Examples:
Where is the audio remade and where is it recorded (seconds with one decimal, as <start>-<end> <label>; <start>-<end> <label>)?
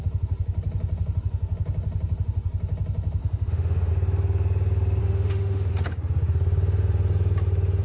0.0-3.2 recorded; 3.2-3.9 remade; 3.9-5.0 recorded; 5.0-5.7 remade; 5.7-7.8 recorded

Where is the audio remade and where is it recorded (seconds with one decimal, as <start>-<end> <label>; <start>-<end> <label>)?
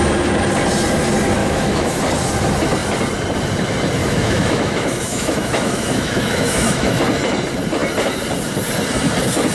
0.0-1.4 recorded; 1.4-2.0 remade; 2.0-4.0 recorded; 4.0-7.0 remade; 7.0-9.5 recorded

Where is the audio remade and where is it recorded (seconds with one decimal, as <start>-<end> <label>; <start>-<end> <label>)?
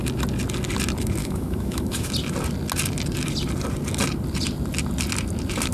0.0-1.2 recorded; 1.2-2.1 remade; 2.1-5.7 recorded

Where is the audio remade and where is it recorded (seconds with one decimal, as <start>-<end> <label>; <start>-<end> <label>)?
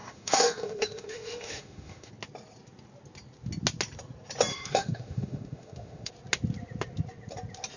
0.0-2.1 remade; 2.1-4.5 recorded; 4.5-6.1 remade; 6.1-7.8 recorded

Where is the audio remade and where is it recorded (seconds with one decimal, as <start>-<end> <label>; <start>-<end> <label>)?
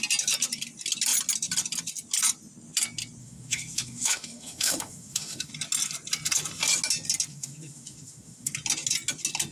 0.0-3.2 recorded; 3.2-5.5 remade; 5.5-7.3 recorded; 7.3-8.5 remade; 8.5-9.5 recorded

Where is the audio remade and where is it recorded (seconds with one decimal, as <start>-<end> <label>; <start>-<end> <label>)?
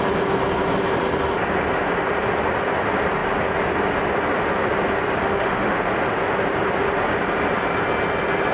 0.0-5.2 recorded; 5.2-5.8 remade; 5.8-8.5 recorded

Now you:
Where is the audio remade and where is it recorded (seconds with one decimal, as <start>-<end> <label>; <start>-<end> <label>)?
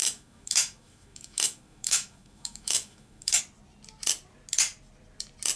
0.0-3.4 remade; 3.4-5.6 recorded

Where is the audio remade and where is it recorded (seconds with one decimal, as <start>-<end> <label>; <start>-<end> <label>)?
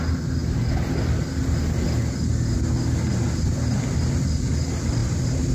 0.0-5.5 recorded